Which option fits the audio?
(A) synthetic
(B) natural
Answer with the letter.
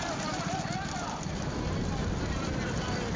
B